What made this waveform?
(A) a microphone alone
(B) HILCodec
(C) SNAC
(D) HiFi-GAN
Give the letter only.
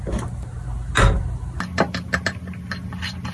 A